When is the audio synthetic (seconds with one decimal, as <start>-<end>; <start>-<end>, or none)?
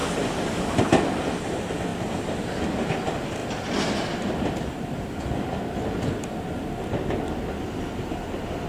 0.8-3.4; 8.1-8.7